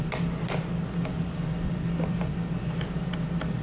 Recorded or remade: recorded